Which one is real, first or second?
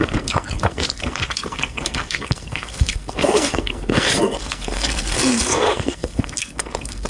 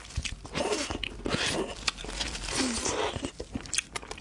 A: second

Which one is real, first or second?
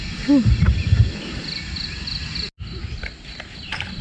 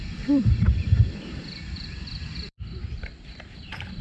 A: first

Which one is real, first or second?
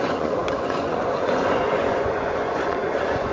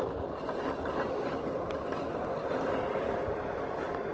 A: second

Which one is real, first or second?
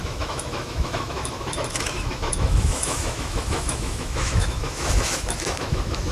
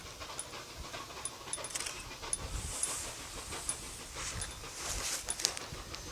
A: second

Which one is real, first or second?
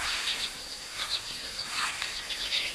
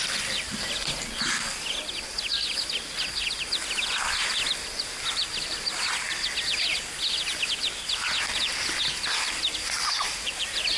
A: second